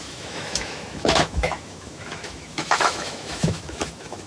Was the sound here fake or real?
fake